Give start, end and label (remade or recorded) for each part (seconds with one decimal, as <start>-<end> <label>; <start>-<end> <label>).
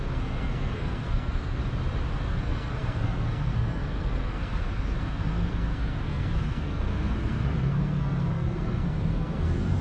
0.0-1.6 remade; 1.6-2.2 recorded; 2.2-9.8 remade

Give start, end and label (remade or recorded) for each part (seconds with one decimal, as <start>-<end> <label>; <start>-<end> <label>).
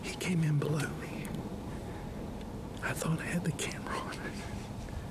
0.0-0.9 recorded; 0.9-1.4 remade; 1.4-5.1 recorded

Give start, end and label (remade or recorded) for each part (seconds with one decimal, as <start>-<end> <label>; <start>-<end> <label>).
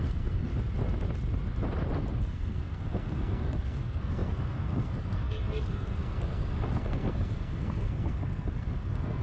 0.0-0.5 remade; 0.5-2.2 recorded; 2.2-9.2 remade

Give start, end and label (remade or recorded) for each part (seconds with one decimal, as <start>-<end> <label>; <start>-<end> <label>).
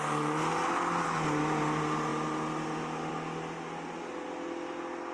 0.0-5.1 recorded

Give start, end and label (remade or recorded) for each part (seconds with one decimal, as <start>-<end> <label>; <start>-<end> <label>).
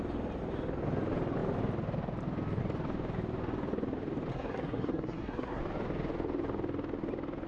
0.0-4.3 recorded; 4.3-5.6 remade; 5.6-7.5 recorded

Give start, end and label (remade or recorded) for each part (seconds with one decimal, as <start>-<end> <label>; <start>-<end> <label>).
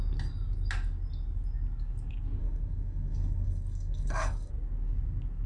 0.0-2.4 recorded; 2.4-4.5 remade; 4.5-5.5 recorded